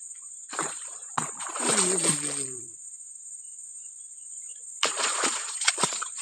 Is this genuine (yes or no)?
no